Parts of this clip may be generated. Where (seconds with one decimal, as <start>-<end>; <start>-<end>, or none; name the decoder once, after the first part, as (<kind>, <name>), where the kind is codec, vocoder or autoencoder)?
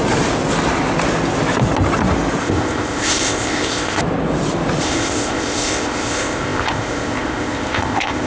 2.4-4.0 (codec, ZipCodec); 4.8-8.3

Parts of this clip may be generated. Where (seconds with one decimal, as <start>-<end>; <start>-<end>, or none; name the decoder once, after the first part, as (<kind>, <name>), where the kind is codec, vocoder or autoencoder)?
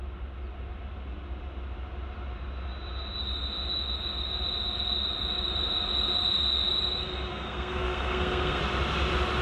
7.3-8.6 (codec, SNAC)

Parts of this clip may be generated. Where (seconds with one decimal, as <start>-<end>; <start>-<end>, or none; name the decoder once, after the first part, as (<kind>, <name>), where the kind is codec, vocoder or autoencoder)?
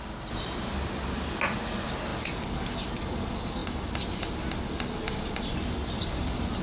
none